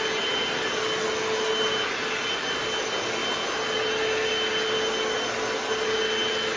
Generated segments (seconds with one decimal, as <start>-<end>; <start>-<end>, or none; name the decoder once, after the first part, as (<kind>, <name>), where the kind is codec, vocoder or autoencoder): none